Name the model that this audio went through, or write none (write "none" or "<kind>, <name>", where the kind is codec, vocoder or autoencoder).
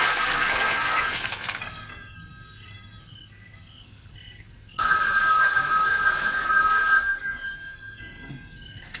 codec, SNAC